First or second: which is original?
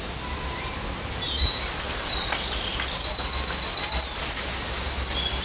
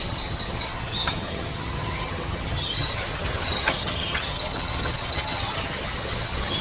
first